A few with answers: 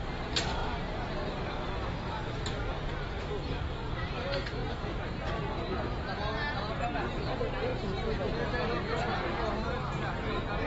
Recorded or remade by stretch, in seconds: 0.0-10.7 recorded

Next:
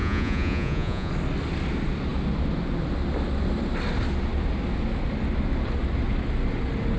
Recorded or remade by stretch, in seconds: 0.0-1.1 remade; 1.1-7.0 recorded

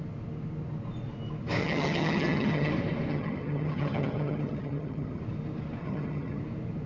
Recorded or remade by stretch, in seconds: 0.0-1.6 recorded; 1.6-2.7 remade; 2.7-3.1 recorded; 3.1-5.2 remade; 5.2-5.8 recorded; 5.8-6.4 remade; 6.4-6.9 recorded

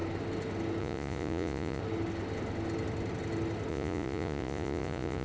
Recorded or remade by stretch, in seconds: 0.0-0.8 recorded; 0.8-1.8 remade; 1.8-3.7 recorded; 3.7-5.2 remade

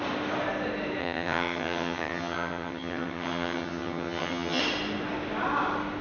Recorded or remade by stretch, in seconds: 0.0-1.0 recorded; 1.0-4.6 remade; 4.6-6.0 recorded